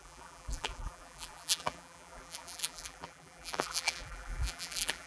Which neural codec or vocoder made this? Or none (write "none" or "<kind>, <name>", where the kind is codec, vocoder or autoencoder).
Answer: vocoder, BigVGAN v2